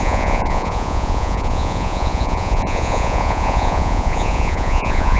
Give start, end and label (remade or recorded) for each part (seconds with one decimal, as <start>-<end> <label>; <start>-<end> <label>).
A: 0.0-5.2 remade